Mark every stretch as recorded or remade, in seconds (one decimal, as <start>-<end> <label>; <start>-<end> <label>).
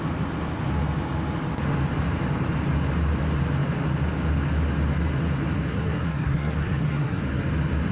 0.0-5.7 recorded; 5.7-7.2 remade; 7.2-7.9 recorded